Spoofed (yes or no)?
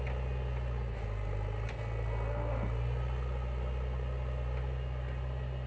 no